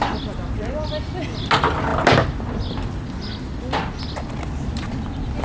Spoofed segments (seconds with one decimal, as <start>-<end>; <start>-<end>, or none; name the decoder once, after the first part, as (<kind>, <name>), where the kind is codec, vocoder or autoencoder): none